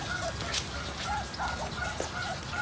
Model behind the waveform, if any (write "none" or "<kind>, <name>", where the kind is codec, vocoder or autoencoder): none